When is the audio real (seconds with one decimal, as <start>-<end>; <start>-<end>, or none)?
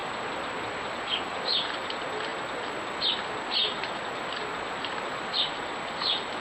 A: 0.0-6.4